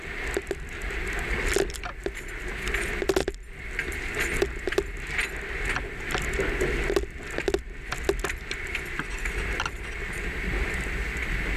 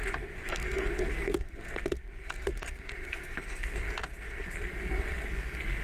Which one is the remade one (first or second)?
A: second